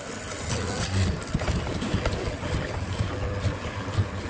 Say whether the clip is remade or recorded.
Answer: recorded